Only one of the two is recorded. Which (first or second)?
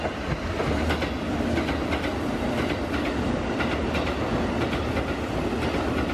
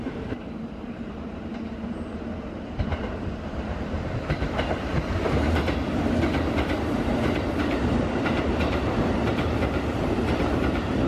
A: first